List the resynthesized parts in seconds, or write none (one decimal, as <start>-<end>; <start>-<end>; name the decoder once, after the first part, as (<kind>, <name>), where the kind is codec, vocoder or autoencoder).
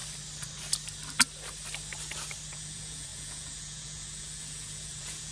2.5-5.3 (vocoder, Vocos)